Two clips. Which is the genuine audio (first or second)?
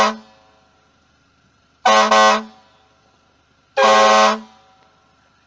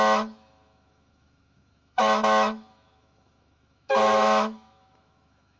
first